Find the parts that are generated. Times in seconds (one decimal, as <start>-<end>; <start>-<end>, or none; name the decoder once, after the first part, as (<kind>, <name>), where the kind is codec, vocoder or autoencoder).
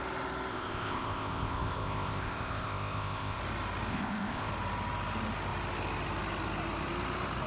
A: 0.5-3.4 (codec, ZipCodec); 3.9-4.5